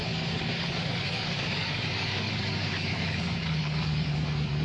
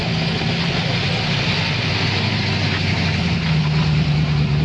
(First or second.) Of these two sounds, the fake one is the first